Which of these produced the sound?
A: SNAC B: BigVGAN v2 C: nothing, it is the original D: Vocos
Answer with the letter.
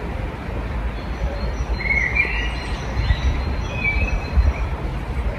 C